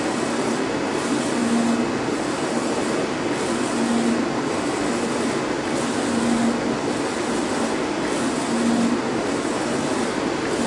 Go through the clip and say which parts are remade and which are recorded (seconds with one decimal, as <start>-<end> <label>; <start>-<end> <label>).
0.0-10.7 recorded